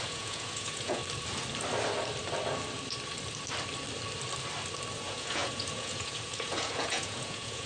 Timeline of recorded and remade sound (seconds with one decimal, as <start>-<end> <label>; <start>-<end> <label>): 0.0-1.0 remade; 1.0-5.0 recorded; 5.0-7.7 remade